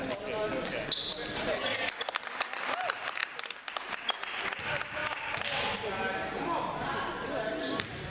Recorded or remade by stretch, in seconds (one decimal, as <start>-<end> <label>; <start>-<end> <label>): 0.0-8.1 recorded